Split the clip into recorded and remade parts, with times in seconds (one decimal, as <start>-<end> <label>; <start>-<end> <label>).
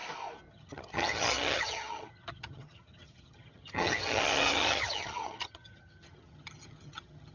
0.0-0.5 recorded; 0.5-7.3 remade